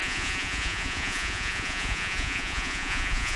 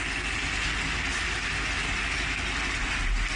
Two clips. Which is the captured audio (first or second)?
second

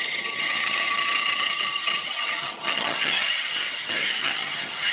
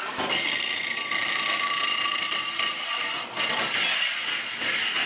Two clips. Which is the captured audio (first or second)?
second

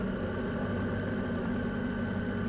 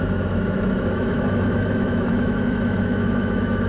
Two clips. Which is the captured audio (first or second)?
first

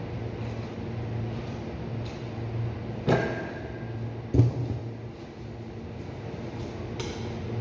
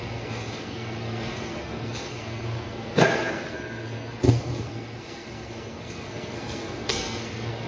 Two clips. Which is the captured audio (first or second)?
first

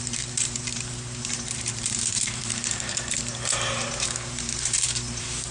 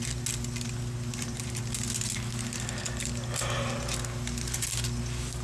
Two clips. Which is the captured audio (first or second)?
second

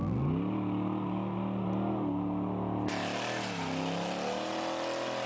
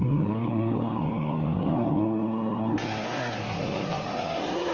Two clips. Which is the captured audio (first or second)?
first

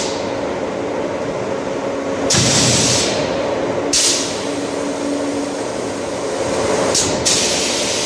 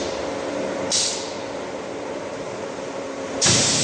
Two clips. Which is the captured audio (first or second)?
first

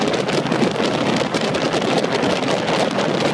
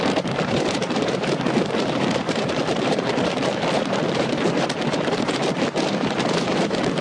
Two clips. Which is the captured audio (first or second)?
first